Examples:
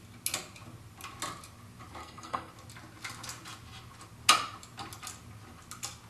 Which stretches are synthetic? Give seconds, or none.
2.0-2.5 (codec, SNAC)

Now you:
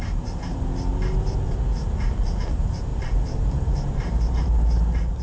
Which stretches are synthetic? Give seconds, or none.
0.0-0.7 (vocoder, BigVGAN v2); 2.4-5.2

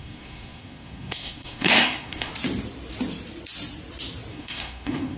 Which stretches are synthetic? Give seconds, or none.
0.0-2.3 (codec, SNAC); 4.3-5.2

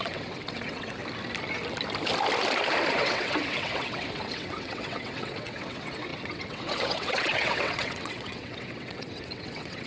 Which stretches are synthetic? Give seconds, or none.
0.0-1.0 (vocoder, WaveNeXt); 2.9-9.9

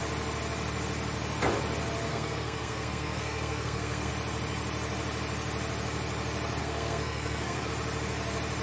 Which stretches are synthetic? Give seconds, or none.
2.1-4.1 (codec, SNAC); 6.6-7.7